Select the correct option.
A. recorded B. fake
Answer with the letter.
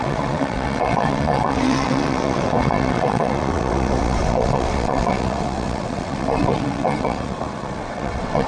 B